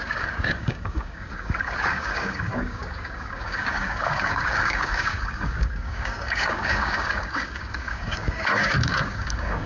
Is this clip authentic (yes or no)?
no